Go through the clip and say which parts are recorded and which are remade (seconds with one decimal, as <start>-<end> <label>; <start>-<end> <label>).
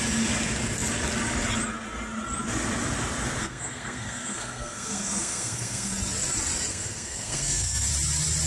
0.0-3.4 recorded; 3.4-5.9 remade; 5.9-6.7 recorded; 6.7-7.9 remade; 7.9-8.5 recorded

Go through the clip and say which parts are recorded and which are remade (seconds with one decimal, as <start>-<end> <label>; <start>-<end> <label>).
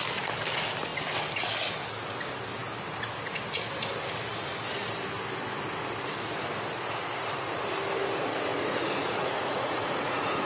0.0-8.5 recorded; 8.5-10.5 remade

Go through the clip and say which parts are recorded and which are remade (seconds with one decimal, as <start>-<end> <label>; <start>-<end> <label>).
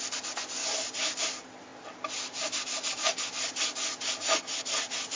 0.0-5.2 recorded